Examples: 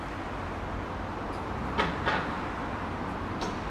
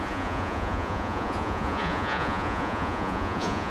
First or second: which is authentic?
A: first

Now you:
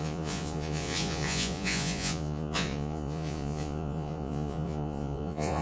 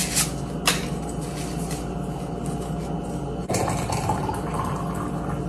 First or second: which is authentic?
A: second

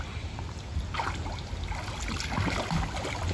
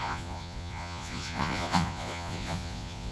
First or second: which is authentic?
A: first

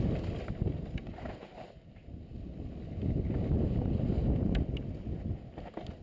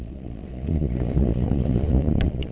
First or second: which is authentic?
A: first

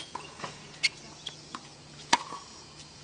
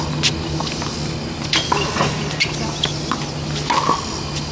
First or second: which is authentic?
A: second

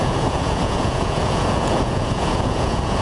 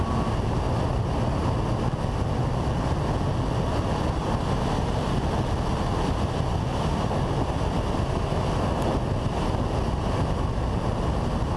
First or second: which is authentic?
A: second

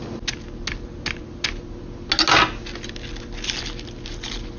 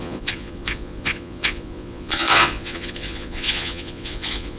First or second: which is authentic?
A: first